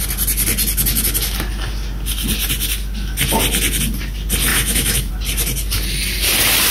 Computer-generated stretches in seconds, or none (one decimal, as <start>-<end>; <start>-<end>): 4.5-5.1

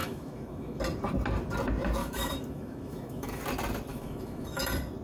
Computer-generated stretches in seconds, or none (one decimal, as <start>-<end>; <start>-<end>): 0.0-0.8; 2.0-3.4; 3.9-4.6

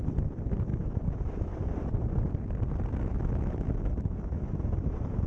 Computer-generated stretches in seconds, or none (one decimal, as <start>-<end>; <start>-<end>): 0.7-1.6; 3.1-5.3

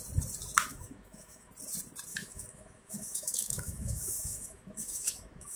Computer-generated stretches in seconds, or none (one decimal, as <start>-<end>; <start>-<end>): 0.7-1.5; 2.1-5.6

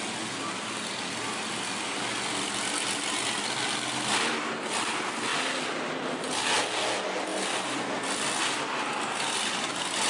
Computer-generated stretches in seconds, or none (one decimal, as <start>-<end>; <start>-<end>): none